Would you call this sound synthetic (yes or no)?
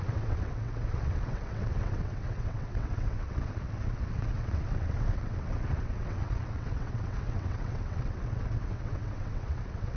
yes